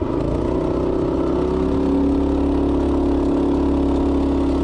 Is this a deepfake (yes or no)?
no